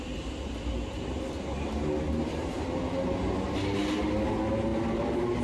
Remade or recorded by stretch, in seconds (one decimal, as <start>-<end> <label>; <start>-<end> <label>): 0.0-5.4 recorded